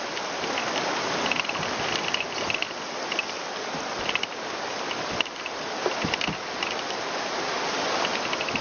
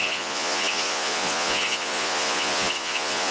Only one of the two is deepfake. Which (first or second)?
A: second